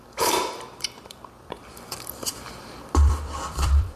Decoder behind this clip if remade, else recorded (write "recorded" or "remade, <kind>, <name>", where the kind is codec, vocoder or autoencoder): remade, vocoder, BigVGAN v2